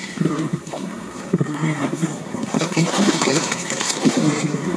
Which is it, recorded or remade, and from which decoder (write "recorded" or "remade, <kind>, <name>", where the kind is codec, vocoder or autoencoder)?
remade, codec, SNAC